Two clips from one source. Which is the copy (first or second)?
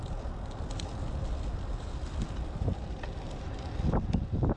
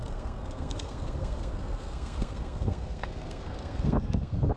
second